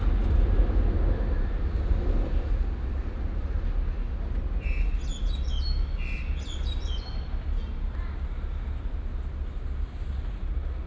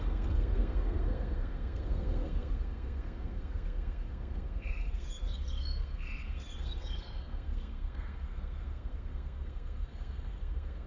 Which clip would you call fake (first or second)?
second